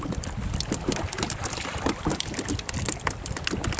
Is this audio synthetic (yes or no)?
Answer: no